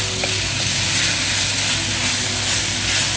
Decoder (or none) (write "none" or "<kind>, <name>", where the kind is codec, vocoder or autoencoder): none